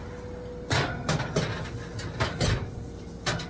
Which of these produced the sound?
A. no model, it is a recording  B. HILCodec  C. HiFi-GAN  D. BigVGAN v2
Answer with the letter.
A